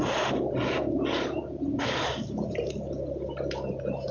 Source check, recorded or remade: recorded